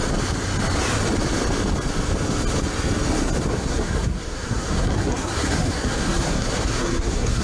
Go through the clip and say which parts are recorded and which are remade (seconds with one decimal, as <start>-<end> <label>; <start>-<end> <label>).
0.0-3.5 recorded; 3.5-7.4 remade